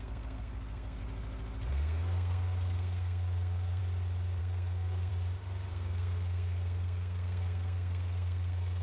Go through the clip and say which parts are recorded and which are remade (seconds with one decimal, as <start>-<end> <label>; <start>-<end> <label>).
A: 0.0-1.0 remade; 1.0-1.7 recorded; 1.7-3.8 remade; 3.8-4.4 recorded; 4.4-5.1 remade; 5.1-5.7 recorded; 5.7-8.8 remade